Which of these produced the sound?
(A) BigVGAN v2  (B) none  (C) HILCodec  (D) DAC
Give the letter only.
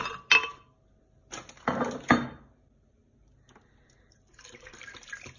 B